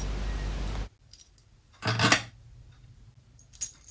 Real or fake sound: real